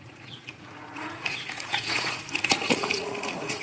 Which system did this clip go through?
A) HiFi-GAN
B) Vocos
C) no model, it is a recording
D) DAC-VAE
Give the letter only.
B